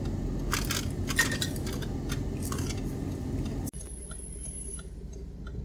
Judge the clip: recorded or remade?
recorded